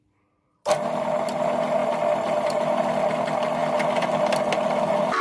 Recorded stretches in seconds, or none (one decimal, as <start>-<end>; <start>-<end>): 0.0-5.2